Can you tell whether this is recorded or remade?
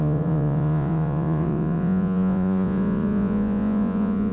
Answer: remade